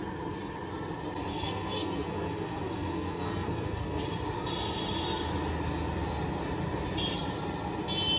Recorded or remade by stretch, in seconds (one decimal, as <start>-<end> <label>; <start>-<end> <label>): 0.0-1.3 recorded; 1.3-4.0 remade; 4.0-8.2 recorded